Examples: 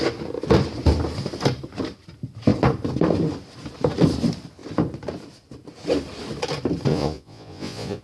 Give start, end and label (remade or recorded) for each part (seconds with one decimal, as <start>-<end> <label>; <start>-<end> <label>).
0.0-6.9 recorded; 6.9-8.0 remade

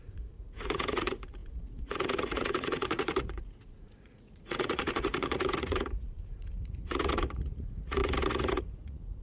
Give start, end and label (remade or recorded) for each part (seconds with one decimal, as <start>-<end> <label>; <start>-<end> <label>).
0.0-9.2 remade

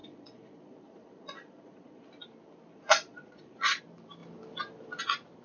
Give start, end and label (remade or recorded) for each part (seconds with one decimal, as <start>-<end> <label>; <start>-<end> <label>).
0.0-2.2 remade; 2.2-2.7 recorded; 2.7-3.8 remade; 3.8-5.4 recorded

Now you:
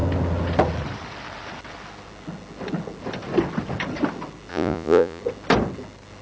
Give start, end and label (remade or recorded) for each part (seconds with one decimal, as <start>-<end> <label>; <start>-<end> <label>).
0.0-4.5 recorded; 4.5-5.2 remade; 5.2-6.2 recorded

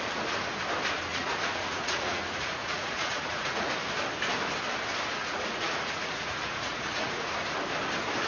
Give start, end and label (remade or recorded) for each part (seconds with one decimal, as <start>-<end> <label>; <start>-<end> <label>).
0.0-1.1 recorded; 1.1-3.7 remade; 3.7-5.2 recorded; 5.2-7.3 remade; 7.3-8.3 recorded